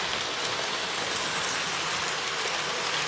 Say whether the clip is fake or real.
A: real